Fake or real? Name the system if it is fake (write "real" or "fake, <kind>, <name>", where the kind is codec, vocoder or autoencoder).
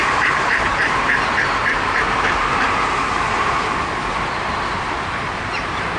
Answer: fake, vocoder, BigVGAN v2